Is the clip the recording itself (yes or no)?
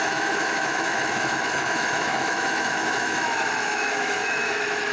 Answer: no